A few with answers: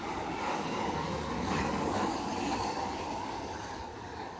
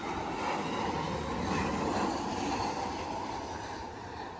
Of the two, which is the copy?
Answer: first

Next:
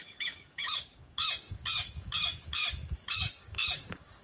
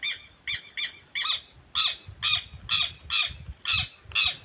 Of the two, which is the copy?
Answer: first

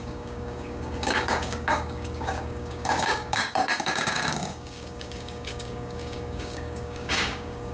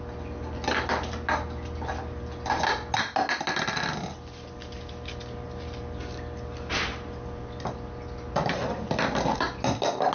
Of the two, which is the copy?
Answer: first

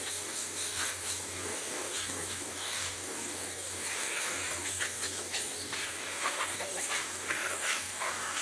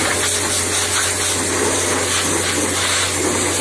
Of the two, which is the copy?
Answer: first